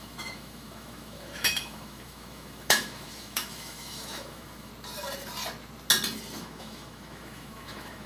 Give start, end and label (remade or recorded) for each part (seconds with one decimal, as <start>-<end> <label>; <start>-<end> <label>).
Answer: 0.0-4.7 remade; 4.7-6.4 recorded; 6.4-8.1 remade